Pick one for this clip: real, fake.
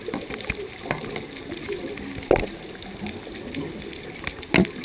real